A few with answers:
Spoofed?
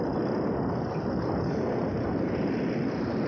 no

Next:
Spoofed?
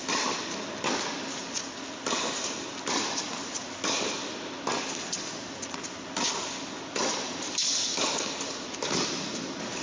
no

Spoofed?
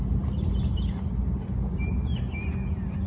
no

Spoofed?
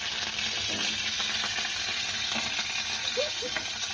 no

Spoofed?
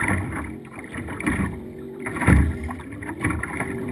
yes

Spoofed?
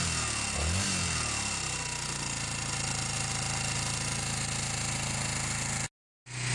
no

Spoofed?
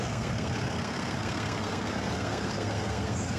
yes